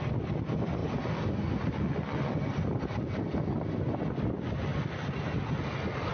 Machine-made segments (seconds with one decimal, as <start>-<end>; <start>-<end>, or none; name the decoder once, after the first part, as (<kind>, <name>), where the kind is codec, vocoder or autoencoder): none